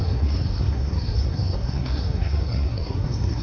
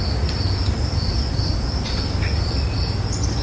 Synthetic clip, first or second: first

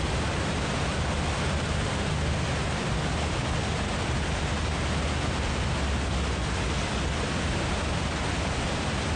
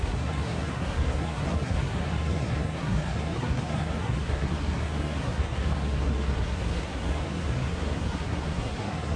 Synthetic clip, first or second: second